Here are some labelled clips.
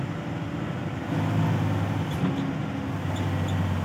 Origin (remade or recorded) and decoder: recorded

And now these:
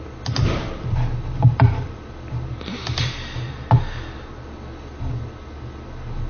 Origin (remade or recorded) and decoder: recorded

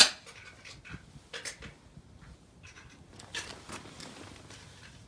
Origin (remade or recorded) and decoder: recorded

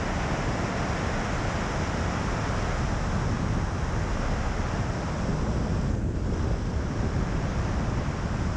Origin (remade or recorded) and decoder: recorded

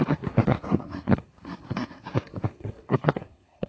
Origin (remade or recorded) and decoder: remade, codec, SNAC